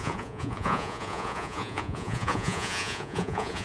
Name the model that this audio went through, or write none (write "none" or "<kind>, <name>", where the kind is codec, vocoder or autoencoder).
vocoder, Vocos